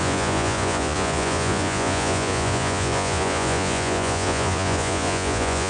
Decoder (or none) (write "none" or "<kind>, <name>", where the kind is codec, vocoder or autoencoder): vocoder, Vocos